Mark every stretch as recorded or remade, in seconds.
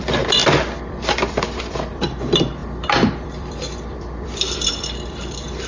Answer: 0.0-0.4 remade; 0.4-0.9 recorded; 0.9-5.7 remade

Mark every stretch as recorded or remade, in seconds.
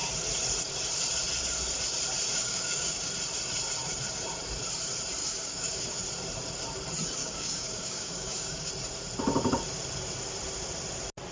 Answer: 0.0-2.3 recorded; 2.3-3.1 remade; 3.1-5.2 recorded; 5.2-6.0 remade; 6.0-7.2 recorded; 7.2-8.7 remade; 8.7-11.3 recorded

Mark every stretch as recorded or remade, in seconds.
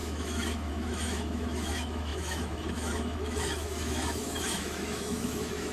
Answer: 0.0-5.7 remade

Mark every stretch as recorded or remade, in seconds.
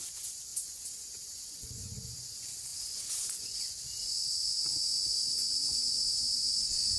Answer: 0.0-7.0 remade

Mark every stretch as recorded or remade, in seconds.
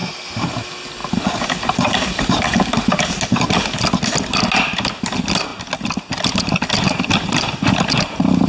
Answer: 0.0-8.5 recorded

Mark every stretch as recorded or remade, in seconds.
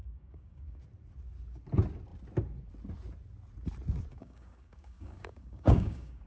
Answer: 0.0-0.8 remade; 0.8-4.1 recorded; 4.1-6.3 remade